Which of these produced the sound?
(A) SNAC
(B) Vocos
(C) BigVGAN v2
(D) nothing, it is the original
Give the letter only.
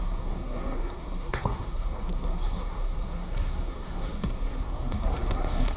A